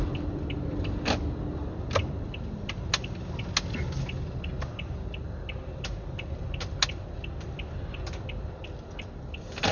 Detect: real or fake real